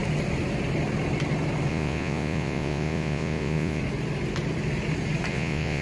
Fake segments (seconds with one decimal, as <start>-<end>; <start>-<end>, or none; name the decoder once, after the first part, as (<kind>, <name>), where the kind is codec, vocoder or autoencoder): 1.7-3.8 (vocoder, Vocos); 5.3-5.8